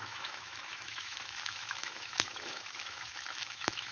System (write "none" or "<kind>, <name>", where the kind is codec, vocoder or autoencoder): autoencoder, DAC-VAE